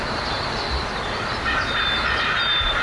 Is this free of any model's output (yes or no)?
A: yes